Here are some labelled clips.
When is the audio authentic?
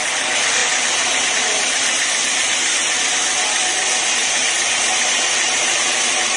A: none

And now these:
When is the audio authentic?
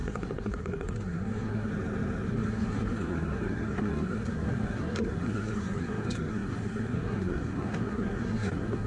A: 1.7-2.3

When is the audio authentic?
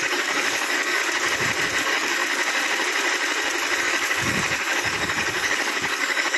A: 1.0-1.8; 2.2-3.8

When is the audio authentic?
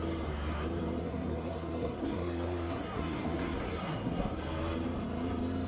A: 0.0-1.0; 4.4-5.7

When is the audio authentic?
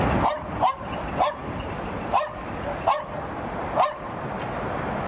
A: 0.0-5.1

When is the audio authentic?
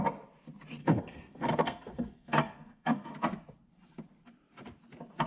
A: 0.0-0.8; 3.1-5.3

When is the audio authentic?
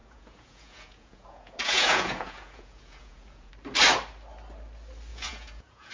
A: 3.5-5.1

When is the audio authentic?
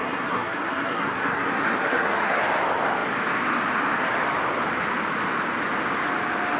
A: 2.4-6.6